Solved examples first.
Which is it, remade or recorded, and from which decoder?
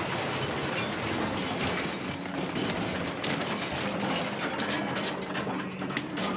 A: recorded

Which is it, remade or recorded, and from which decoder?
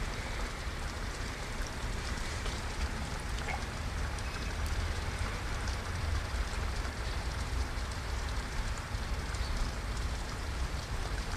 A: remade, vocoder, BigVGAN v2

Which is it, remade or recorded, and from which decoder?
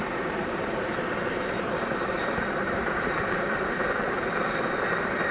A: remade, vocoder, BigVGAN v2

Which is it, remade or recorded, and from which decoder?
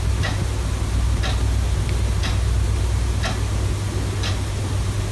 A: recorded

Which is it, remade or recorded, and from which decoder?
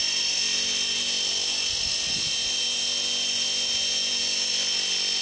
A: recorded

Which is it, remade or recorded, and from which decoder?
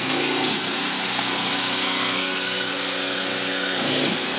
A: remade, codec, SNAC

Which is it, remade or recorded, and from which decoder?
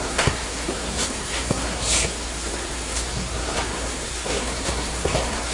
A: remade, codec, SNAC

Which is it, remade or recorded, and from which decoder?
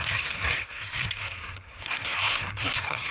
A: remade, codec, SNAC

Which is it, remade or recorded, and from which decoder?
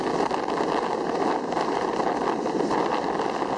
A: recorded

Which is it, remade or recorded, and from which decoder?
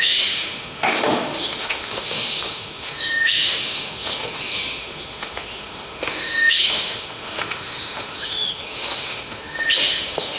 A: remade, autoencoder, DAC-VAE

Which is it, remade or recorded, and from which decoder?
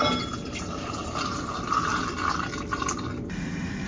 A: recorded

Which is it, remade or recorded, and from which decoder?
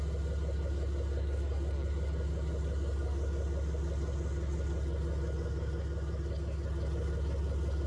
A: recorded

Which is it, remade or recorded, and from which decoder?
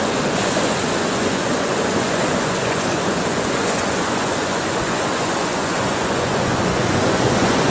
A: remade, vocoder, Vocos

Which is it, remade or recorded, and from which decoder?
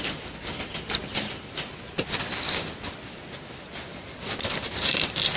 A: recorded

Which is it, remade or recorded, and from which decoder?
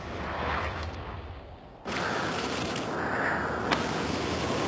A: recorded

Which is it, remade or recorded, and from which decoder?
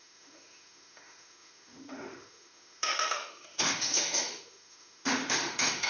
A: remade, autoencoder, DAC-VAE